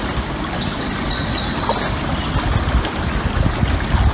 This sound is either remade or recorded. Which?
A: recorded